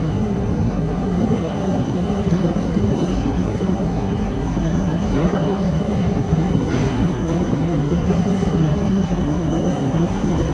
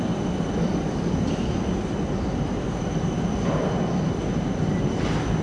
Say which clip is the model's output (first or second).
first